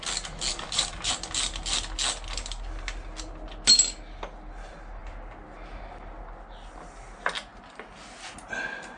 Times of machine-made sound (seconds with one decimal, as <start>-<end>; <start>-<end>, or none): 0.5-1.1